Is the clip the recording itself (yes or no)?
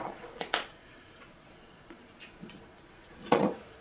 no